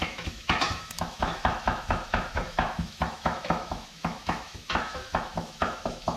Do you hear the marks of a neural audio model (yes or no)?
yes